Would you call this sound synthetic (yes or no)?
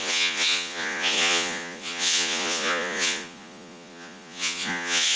yes